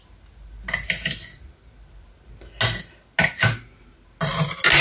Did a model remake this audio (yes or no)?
no